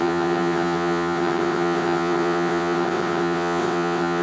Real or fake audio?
fake